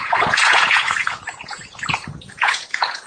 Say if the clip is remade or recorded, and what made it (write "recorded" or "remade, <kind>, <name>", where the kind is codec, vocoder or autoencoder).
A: remade, vocoder, Vocos